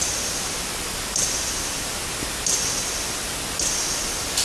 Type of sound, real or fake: real